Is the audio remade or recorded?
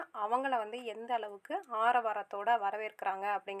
recorded